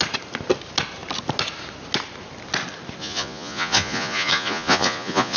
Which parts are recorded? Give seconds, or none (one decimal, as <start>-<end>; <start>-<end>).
0.0-3.0